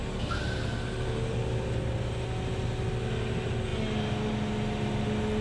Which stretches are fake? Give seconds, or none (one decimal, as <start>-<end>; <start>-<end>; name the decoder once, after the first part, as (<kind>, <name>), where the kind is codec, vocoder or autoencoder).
none